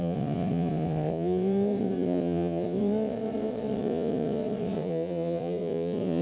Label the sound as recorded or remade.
remade